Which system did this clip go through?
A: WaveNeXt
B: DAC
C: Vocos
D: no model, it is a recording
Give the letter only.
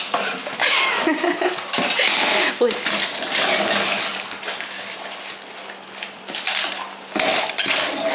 D